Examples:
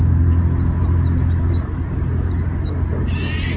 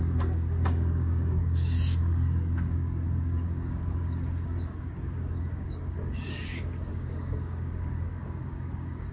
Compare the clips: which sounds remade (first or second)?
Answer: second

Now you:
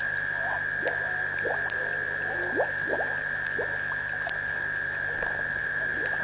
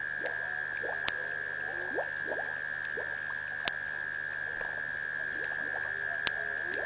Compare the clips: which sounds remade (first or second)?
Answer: first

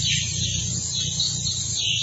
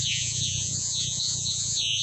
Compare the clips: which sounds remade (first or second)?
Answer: second